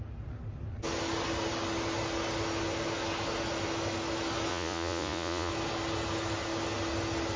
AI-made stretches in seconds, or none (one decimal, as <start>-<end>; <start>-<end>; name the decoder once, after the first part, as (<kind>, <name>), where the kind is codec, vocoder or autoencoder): 4.5-5.5 (vocoder, Vocos)